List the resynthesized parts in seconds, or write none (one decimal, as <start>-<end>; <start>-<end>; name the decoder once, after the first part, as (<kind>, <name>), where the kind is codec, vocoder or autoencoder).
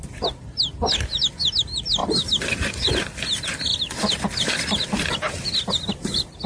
none